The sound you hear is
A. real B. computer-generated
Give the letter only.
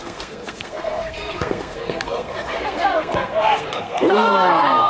B